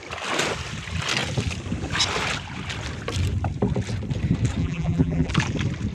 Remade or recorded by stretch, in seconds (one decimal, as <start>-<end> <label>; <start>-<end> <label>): 0.0-4.6 recorded; 4.6-5.3 remade; 5.3-5.9 recorded